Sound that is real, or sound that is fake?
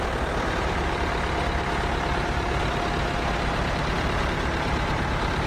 real